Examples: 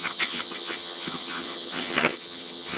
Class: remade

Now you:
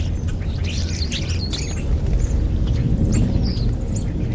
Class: recorded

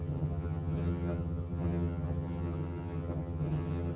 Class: remade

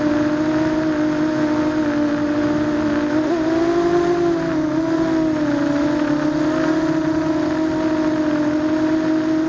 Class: recorded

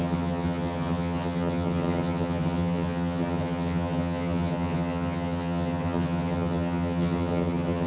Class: remade